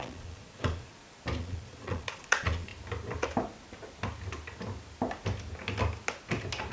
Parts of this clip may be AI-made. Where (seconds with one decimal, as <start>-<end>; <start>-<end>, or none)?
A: 0.0-0.9; 1.4-2.7